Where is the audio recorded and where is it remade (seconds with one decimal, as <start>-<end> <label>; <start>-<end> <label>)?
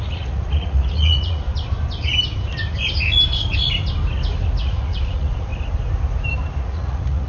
0.0-1.4 remade; 1.4-4.6 recorded; 4.6-5.5 remade; 5.5-6.6 recorded; 6.6-7.3 remade